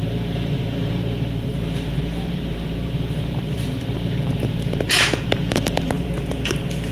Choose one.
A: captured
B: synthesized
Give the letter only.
B